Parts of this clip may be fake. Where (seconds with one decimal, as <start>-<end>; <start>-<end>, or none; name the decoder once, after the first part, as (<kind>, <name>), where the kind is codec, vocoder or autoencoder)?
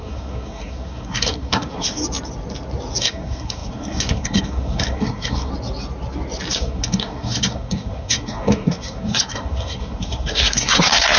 0.0-2.0 (codec, SNAC); 3.0-5.5; 6.5-11.2